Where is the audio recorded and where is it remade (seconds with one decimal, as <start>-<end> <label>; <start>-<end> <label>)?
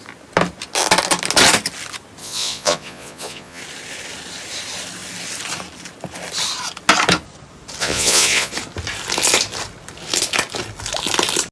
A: 0.0-2.2 recorded; 2.2-3.6 remade; 3.6-7.8 recorded; 7.8-8.5 remade; 8.5-11.5 recorded